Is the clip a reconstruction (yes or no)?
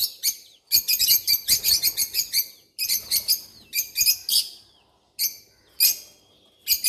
no